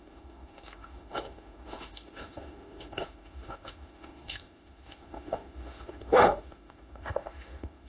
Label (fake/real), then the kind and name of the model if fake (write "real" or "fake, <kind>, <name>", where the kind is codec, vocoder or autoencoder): fake, autoencoder, DAC-VAE